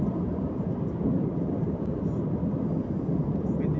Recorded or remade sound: recorded